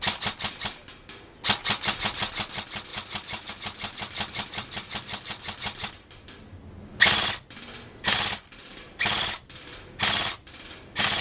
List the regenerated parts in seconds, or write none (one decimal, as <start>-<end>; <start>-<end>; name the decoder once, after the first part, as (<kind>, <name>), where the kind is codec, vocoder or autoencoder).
2.9-3.5 (vocoder, BigVGAN v2); 8.6-10.0